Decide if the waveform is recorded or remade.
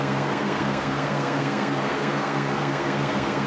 remade